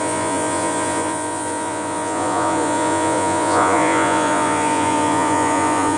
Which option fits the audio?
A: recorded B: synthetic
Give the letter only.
B